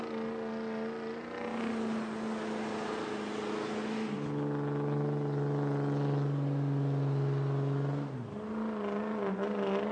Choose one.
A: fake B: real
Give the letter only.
B